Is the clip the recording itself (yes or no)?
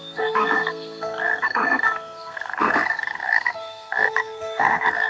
no